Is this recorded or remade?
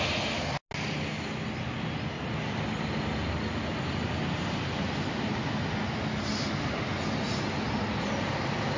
recorded